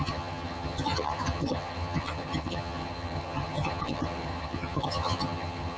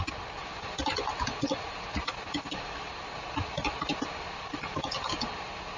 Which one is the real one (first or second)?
second